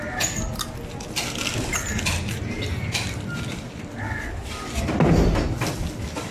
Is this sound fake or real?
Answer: real